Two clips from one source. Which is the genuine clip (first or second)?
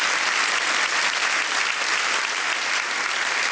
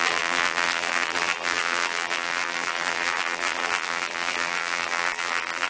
first